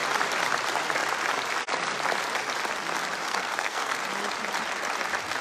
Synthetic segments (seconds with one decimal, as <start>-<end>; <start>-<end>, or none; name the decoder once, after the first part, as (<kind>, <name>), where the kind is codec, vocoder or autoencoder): 3.2-4.0 (codec, SNAC)